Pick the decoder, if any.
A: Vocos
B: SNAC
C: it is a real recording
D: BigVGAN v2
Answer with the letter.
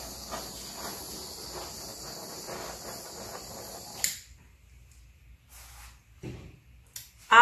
C